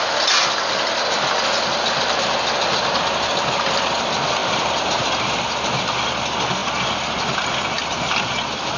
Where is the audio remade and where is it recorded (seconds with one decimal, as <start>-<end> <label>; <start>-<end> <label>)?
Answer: 0.0-8.8 recorded